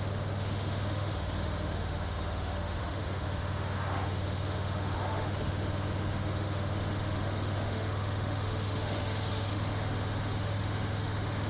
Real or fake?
fake